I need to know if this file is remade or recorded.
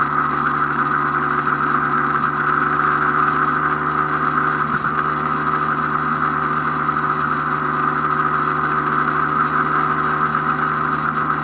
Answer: recorded